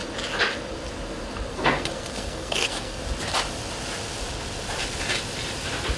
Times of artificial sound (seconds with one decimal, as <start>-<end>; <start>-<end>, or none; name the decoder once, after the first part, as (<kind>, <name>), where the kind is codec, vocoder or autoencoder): 1.5-3.0 (codec, SNAC)